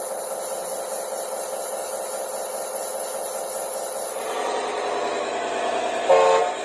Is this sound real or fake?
real